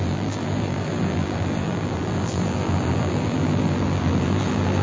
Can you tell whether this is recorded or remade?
remade